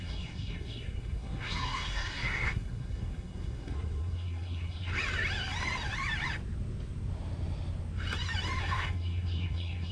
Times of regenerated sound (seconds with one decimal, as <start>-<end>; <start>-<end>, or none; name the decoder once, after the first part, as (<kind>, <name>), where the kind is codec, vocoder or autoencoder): 0.0-4.9 (codec, SNAC); 8.6-9.9